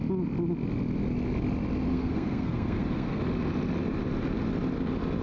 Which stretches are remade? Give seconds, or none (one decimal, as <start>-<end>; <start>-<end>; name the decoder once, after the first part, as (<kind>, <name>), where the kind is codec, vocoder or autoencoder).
1.9-3.2 (codec, SNAC)